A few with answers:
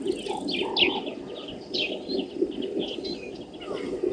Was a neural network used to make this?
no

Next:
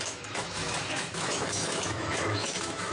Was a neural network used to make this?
yes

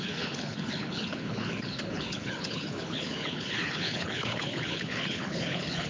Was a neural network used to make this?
yes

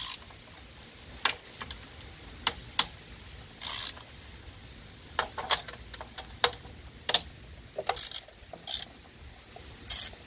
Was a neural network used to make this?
no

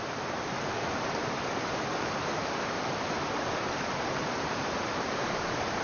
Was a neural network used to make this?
yes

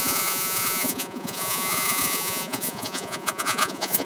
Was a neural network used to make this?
yes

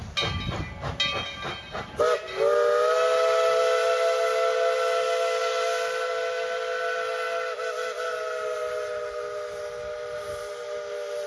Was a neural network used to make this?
no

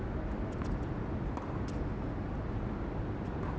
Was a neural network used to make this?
no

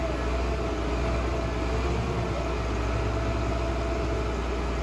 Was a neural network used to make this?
no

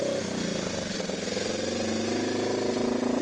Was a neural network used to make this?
no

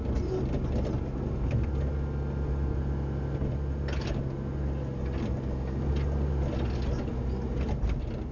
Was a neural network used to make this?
no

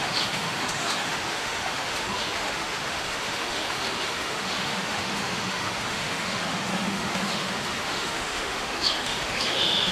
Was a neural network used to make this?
yes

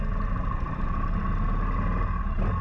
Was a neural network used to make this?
yes